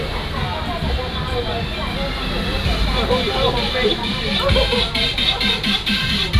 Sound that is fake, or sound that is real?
real